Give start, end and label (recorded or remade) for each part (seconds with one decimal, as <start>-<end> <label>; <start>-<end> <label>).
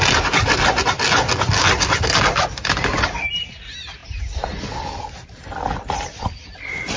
0.0-7.0 recorded